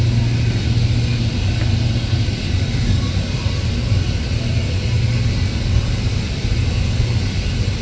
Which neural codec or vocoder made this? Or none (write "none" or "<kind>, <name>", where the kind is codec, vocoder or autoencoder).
none